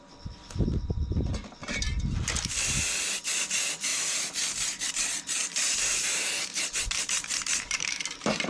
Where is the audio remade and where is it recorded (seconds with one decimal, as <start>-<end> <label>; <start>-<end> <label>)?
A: 0.0-3.9 recorded; 3.9-4.9 remade; 4.9-5.4 recorded; 5.4-8.5 remade